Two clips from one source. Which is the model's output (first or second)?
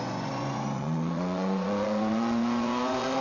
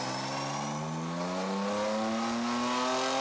first